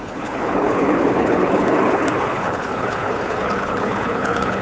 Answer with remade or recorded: remade